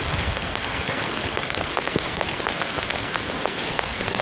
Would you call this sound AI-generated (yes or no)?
yes